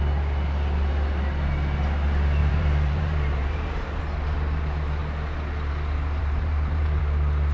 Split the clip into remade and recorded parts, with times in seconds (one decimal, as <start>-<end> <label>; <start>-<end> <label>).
0.0-2.4 recorded; 2.4-4.0 remade; 4.0-6.2 recorded; 6.2-7.0 remade; 7.0-7.5 recorded